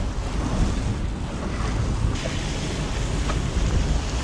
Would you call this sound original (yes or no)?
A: yes